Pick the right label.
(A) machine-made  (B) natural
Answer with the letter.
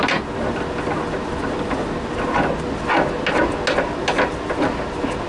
B